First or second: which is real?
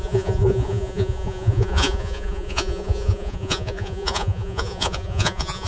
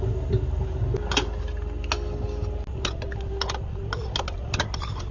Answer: second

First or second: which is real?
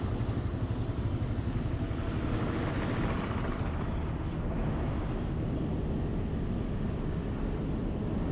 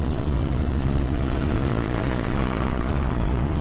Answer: first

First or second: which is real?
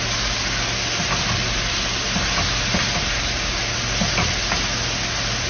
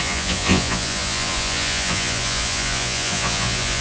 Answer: first